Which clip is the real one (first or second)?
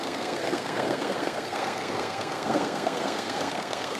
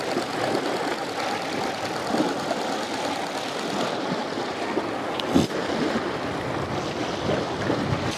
second